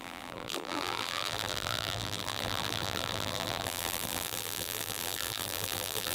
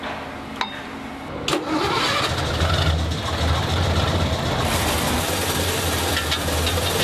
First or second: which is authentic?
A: second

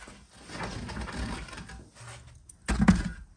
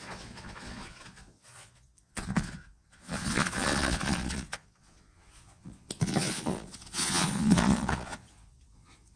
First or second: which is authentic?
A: first